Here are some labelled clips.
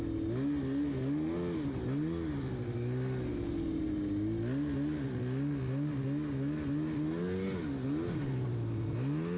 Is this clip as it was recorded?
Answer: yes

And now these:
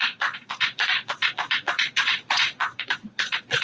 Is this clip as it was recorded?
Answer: no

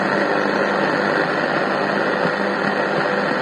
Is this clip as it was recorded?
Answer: yes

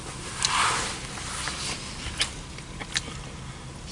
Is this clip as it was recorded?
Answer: no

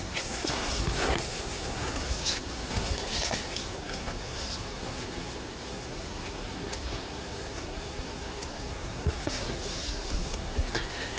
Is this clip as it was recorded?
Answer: no